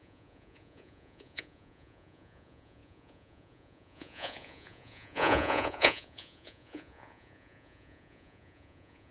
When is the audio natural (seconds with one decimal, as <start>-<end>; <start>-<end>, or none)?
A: none